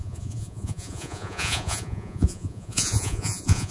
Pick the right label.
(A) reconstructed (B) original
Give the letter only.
A